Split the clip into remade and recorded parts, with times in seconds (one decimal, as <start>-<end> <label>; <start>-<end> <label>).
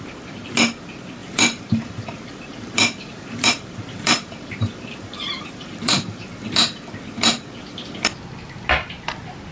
0.0-1.2 recorded; 1.2-6.3 remade; 6.3-9.5 recorded